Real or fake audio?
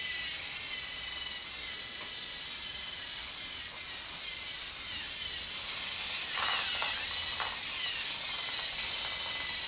real